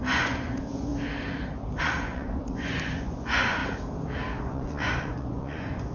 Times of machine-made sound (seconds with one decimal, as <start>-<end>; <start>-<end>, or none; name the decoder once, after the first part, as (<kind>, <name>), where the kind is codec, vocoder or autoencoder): 0.0-0.9 (vocoder, Vocos); 1.8-3.6; 4.4-5.9